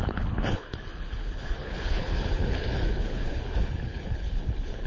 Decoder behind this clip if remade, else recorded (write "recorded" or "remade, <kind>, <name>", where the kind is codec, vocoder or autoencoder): remade, codec, HILCodec